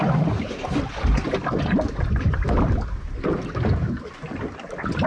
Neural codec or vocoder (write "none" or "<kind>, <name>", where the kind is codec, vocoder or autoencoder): none